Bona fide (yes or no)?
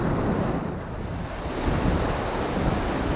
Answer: yes